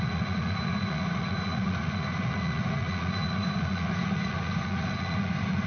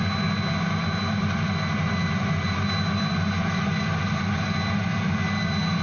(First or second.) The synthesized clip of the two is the first